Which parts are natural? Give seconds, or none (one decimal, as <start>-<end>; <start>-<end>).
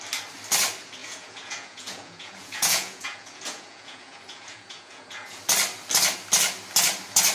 0.0-1.0; 5.4-7.3